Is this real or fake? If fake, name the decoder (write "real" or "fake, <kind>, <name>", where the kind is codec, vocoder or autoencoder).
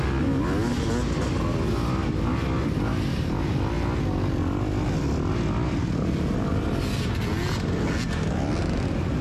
real